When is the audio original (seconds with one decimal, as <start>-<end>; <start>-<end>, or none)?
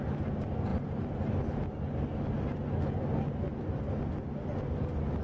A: 0.0-5.2